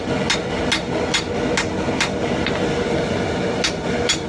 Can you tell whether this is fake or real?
real